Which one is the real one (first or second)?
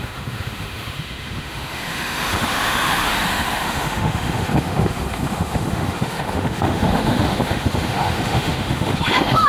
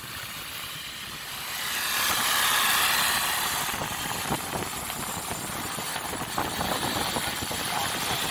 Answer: second